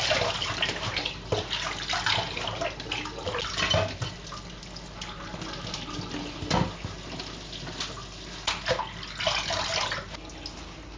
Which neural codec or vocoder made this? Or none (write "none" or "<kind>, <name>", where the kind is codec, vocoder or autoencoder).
none